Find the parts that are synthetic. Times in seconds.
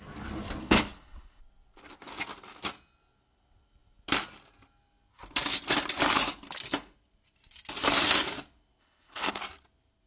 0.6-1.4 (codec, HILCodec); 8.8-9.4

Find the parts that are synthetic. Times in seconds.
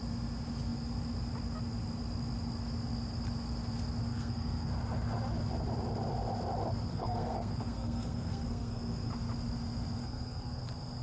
4.1-4.7 (codec, SNAC); 6.9-9.1; 10.0-10.6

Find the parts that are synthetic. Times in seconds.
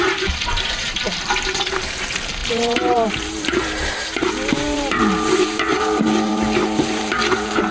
0.0-7.7 (vocoder, BigVGAN v2)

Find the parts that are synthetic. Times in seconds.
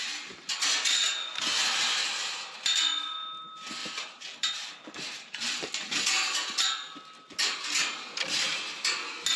3.8-5.9 (vocoder, BigVGAN v2)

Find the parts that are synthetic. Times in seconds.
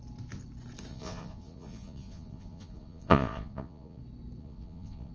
0.9-4.0 (vocoder, Vocos); 4.4-5.1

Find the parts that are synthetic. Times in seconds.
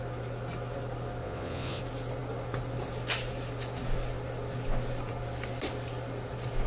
1.2-1.8 (vocoder, Vocos)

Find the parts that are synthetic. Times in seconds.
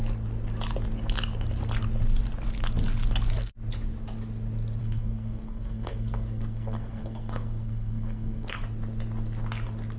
4.8-8.6 (codec, SNAC)